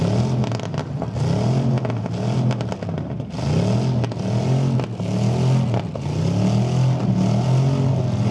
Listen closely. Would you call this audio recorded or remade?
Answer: recorded